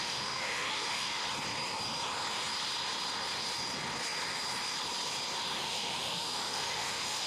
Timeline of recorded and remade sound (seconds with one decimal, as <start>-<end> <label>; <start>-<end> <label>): 0.0-1.2 remade; 1.2-5.6 recorded; 5.6-7.3 remade